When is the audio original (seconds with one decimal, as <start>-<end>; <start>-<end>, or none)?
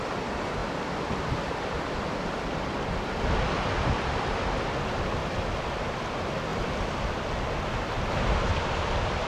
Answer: 0.0-0.6; 3.4-5.2; 5.8-8.5